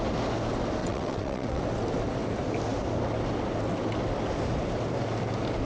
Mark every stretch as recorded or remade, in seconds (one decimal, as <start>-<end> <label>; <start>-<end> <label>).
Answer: 0.0-0.8 recorded; 0.8-1.6 remade; 1.6-5.7 recorded